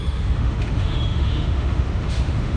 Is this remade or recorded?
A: remade